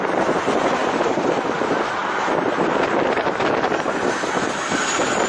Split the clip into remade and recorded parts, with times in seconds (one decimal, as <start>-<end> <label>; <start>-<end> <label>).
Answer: 0.0-0.8 recorded; 0.8-1.4 remade; 1.4-2.0 recorded; 2.0-5.3 remade